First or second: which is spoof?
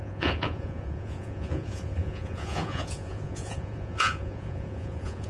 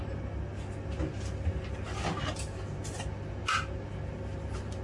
first